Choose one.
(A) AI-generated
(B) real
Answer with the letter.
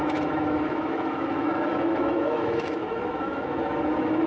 A